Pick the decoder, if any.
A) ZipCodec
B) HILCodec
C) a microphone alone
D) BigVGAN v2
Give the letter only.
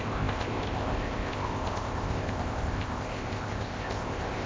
A